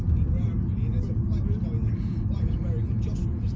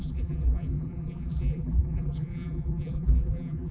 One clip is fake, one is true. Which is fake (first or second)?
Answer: second